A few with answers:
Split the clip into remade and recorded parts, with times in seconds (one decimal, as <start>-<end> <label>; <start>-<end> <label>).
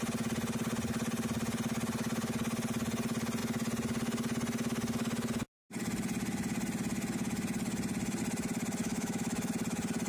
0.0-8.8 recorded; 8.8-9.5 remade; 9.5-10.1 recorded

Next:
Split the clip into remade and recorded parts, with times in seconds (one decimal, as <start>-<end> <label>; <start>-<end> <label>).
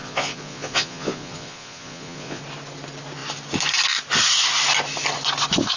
0.0-2.4 remade; 2.4-5.8 recorded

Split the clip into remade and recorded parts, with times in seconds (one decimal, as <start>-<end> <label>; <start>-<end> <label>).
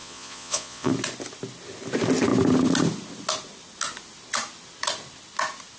0.0-0.9 remade; 0.9-5.8 recorded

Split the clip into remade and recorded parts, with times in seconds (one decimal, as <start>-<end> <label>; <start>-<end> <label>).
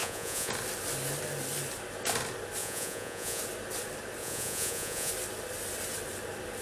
0.0-0.5 remade; 0.5-2.6 recorded; 2.6-3.4 remade; 3.4-4.2 recorded; 4.2-5.1 remade; 5.1-6.6 recorded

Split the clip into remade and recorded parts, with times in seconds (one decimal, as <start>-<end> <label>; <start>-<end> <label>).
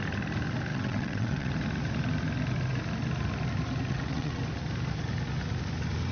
0.0-0.7 recorded; 0.7-1.5 remade; 1.5-3.9 recorded; 3.9-4.4 remade; 4.4-6.1 recorded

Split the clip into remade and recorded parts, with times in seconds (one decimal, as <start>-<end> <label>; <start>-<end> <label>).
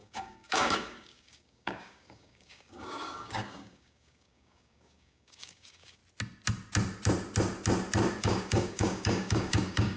0.0-6.0 remade; 6.0-8.2 recorded; 8.2-10.0 remade